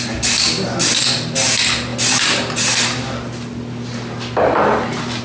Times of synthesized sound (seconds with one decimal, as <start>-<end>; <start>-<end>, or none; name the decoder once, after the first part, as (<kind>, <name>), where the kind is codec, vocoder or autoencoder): none